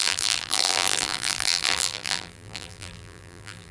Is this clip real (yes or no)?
no